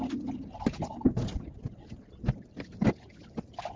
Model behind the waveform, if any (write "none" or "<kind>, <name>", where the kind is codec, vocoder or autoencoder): none